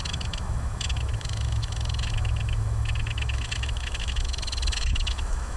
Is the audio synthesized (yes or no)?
yes